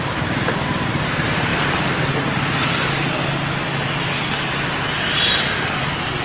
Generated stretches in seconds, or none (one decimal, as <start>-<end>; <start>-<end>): none